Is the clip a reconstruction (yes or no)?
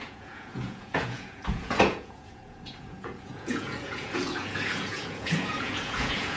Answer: yes